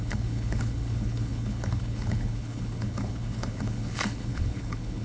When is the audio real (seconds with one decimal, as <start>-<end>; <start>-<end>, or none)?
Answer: none